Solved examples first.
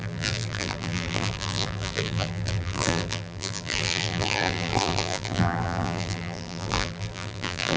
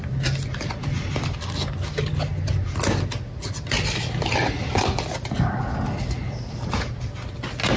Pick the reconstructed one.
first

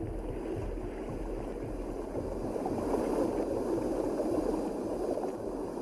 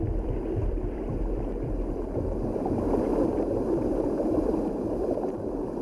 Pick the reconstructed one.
second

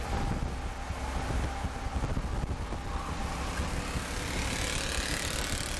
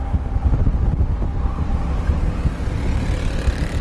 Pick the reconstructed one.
second